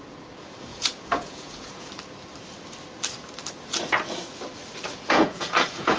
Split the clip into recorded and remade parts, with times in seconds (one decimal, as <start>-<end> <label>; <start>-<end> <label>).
0.0-0.7 recorded; 0.7-1.9 remade; 1.9-4.9 recorded; 4.9-6.0 remade